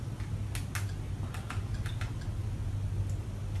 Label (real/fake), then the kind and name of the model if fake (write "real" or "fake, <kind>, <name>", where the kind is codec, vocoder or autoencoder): real